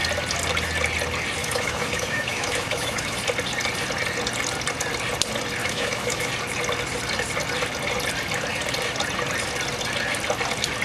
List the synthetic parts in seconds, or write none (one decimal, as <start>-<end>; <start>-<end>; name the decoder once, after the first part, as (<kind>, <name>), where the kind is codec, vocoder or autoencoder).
1.4-3.2 (autoencoder, DAC-VAE); 5.6-6.3